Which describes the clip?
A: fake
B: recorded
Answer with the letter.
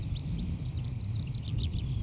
B